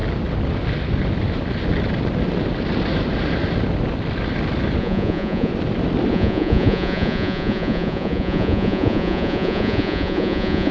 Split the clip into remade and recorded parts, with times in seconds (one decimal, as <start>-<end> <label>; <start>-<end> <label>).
0.0-4.8 recorded; 4.8-5.5 remade; 5.5-6.1 recorded; 6.1-10.7 remade